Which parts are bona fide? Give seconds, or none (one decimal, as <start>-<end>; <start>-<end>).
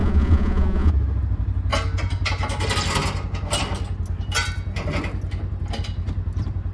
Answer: 0.9-6.7